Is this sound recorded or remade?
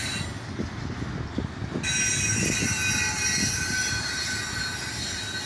recorded